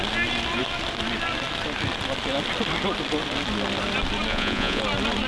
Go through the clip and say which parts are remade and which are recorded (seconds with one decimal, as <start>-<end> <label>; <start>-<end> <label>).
0.0-4.3 recorded; 4.3-4.8 remade; 4.8-5.3 recorded